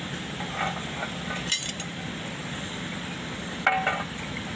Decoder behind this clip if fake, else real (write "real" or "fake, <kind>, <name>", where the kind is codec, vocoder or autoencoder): real